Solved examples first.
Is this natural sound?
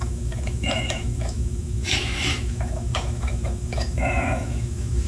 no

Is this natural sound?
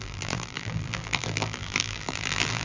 no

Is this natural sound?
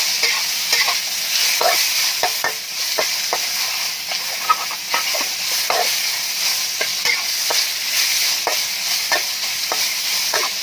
yes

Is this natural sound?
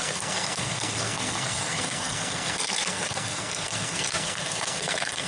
no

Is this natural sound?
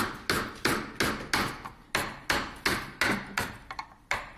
yes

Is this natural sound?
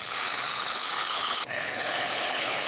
no